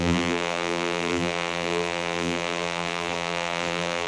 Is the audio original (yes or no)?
no